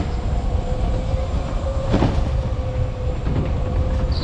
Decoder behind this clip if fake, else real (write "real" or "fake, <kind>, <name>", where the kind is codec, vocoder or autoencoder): fake, vocoder, BigVGAN v2